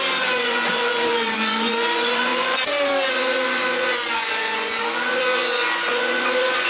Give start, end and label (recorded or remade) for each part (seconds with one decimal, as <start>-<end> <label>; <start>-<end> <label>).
0.0-6.7 remade